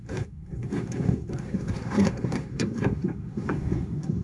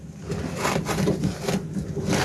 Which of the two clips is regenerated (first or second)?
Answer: first